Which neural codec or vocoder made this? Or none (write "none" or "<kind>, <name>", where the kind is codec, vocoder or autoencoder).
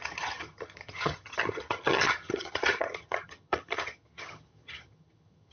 vocoder, HiFi-GAN